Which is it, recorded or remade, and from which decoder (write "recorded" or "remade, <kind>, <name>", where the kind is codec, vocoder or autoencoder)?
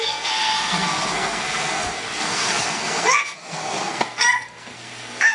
remade, codec, SNAC